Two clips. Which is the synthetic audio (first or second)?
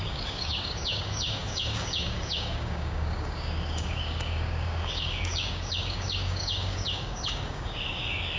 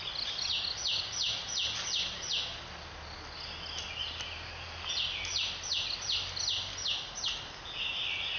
first